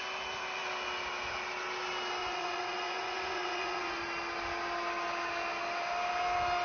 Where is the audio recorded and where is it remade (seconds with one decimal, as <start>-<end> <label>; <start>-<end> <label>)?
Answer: 0.0-2.2 recorded; 2.2-4.0 remade; 4.0-6.6 recorded